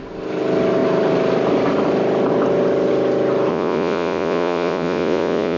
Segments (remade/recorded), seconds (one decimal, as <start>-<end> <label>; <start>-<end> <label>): 0.0-3.5 recorded; 3.5-5.6 remade